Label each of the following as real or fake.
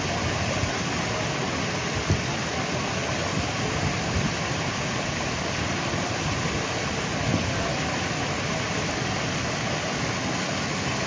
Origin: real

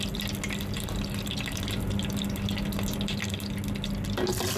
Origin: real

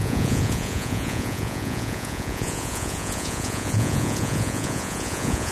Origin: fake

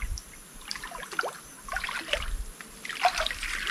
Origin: real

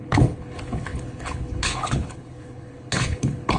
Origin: fake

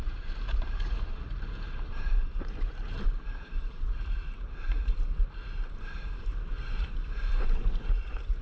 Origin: fake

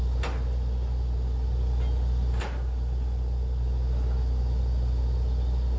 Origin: real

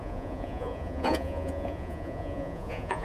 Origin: fake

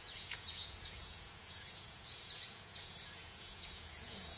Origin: fake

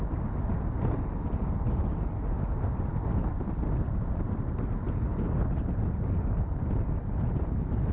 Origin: real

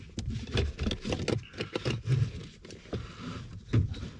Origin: real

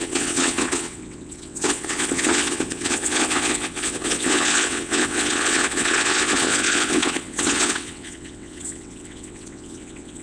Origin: fake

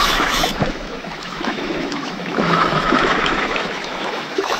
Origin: fake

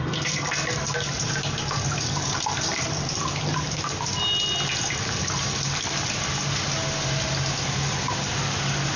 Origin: real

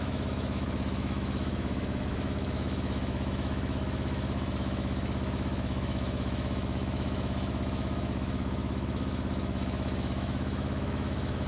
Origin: fake